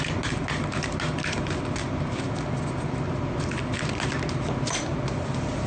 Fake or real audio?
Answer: real